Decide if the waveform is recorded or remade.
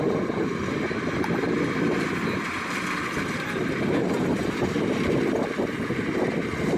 recorded